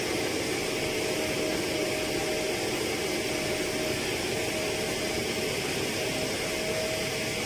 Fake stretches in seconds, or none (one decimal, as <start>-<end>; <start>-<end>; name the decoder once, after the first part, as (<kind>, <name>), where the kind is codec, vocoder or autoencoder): none